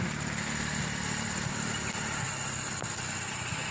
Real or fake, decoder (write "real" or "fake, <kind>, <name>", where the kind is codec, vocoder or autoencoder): real